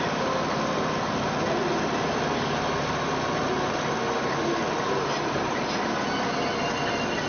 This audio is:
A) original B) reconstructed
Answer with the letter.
A